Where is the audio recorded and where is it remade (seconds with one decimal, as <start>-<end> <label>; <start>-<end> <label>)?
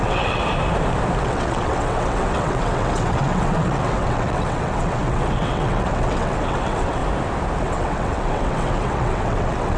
0.0-0.4 remade; 0.4-1.2 recorded; 1.2-7.0 remade; 7.0-7.6 recorded; 7.6-9.8 remade